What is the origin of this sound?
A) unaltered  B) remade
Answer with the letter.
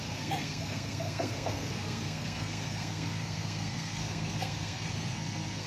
B